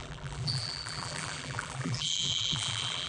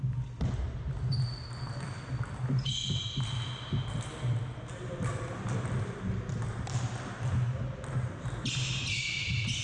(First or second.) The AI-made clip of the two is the first